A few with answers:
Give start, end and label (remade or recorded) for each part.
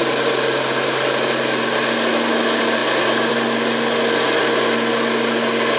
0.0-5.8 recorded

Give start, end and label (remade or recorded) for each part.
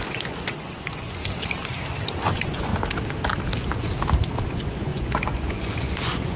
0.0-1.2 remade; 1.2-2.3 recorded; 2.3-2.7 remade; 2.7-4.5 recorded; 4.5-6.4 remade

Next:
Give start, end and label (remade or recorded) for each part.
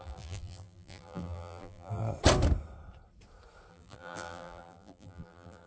0.0-2.0 remade; 2.0-3.7 recorded; 3.7-5.7 remade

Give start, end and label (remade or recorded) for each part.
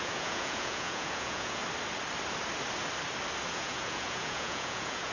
0.0-1.6 remade; 1.6-3.5 recorded; 3.5-5.1 remade